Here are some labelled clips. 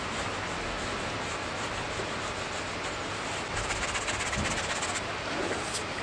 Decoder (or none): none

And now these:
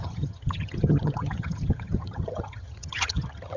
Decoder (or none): vocoder, HiFi-GAN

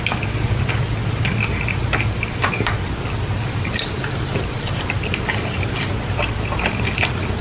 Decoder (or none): none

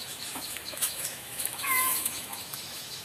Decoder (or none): autoencoder, DAC-VAE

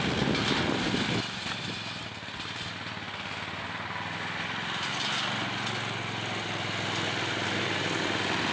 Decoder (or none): none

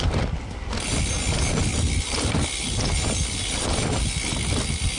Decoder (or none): none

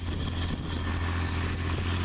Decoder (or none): none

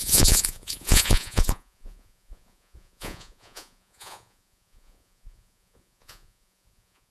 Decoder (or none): vocoder, Vocos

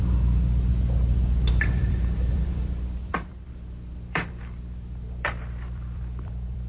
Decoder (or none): vocoder, BigVGAN v2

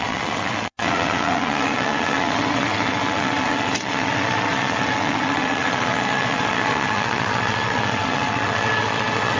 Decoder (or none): vocoder, WaveNeXt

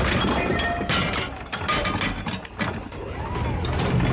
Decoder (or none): none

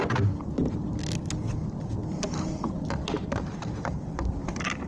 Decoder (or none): none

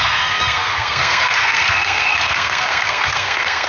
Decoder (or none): codec, SNAC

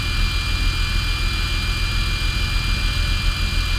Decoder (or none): none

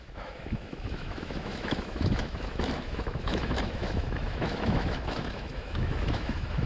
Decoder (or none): autoencoder, DAC-VAE